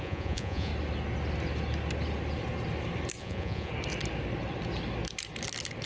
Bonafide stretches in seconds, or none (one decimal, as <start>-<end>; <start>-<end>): 0.7-3.2; 3.7-5.9